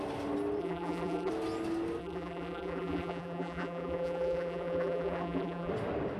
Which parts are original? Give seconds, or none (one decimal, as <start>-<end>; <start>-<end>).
0.0-0.6; 1.3-2.0; 5.7-6.2